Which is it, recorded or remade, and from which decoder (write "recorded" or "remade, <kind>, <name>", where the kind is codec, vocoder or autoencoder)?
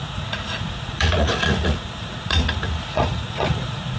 remade, vocoder, Vocos